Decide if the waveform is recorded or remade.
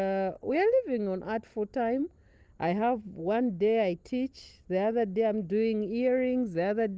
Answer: recorded